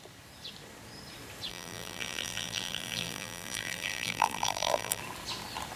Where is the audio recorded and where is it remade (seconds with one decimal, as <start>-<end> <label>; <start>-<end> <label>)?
0.0-1.5 recorded; 1.5-5.0 remade; 5.0-5.8 recorded